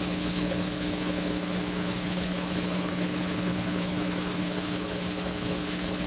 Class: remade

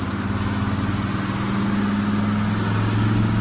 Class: recorded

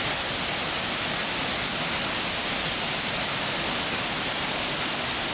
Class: recorded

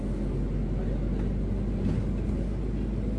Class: recorded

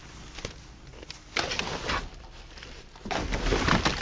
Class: recorded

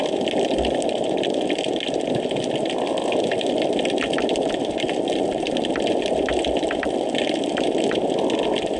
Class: recorded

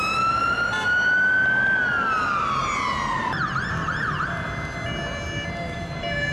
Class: recorded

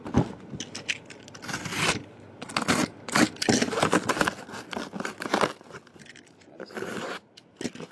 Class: recorded